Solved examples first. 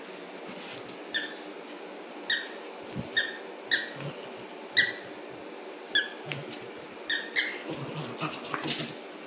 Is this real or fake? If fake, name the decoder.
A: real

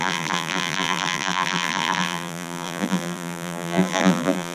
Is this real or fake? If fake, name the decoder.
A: fake, vocoder, BigVGAN v2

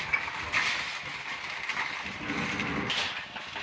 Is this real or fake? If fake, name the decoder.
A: real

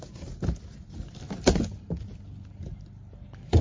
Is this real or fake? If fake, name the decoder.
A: real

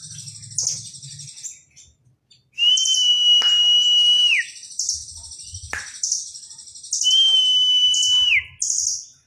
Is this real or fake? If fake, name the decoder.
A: real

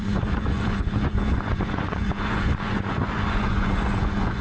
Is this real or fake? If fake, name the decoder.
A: fake, vocoder, Vocos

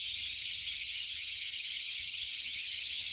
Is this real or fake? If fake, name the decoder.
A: fake, vocoder, HiFi-GAN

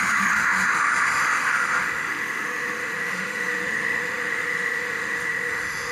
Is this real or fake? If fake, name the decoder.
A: fake, autoencoder, DAC-VAE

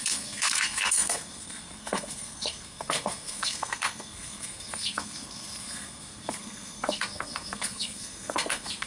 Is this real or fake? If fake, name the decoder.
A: fake, codec, SNAC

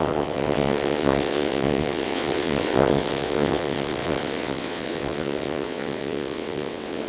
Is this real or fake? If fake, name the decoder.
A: fake, vocoder, WaveNeXt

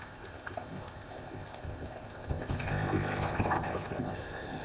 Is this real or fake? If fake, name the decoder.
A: fake, codec, ZipCodec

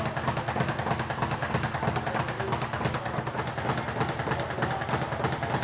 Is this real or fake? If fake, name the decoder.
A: real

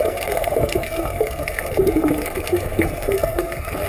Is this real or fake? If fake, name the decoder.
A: fake, codec, SNAC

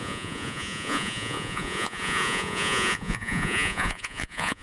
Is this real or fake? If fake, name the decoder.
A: fake, vocoder, Vocos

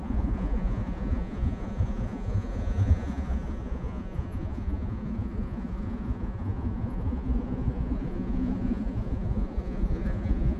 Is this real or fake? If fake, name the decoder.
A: fake, vocoder, Vocos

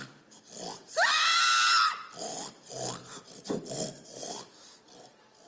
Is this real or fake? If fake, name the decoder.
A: real